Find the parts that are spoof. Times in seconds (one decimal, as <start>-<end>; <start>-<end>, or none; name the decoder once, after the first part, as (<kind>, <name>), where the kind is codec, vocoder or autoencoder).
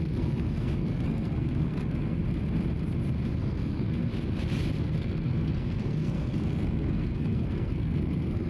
0.0-2.2 (codec, SNAC); 3.4-4.1; 4.8-8.5